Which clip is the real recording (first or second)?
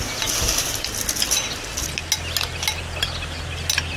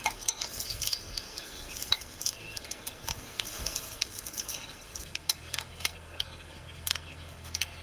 first